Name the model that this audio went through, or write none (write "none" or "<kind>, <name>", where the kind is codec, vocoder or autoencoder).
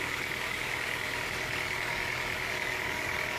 codec, DAC